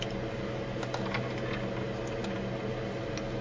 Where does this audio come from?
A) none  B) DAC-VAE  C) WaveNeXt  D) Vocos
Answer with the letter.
A